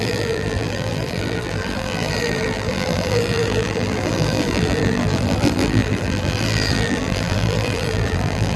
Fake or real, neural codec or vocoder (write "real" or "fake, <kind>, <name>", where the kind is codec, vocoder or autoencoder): fake, vocoder, BigVGAN v2